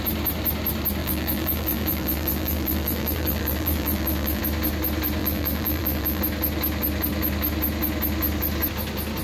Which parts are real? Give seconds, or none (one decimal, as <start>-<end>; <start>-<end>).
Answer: 0.0-1.0; 4.4-5.2; 6.2-9.2